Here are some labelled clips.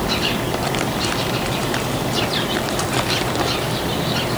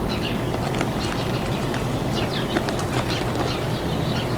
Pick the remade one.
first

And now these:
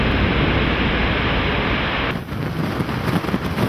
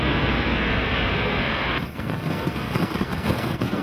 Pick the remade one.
second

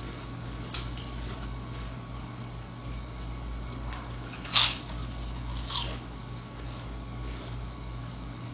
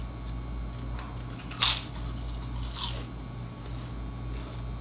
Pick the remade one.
first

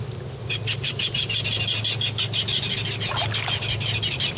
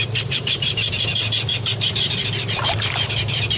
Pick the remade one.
second